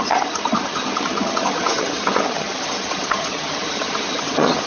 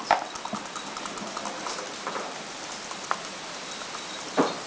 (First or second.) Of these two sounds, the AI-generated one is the first